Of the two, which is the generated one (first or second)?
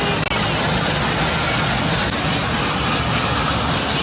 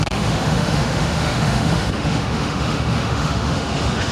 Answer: second